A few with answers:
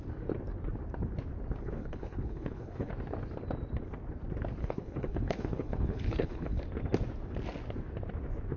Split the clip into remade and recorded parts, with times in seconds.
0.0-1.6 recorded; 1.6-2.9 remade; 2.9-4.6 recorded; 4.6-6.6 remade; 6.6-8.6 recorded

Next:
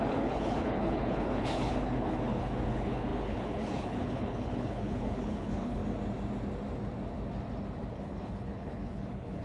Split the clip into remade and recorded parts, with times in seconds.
0.0-5.8 remade; 5.8-7.9 recorded; 7.9-9.4 remade